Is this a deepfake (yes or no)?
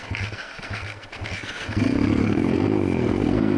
yes